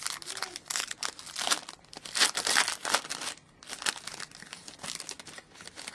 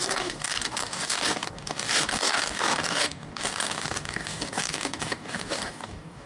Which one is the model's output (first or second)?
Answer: second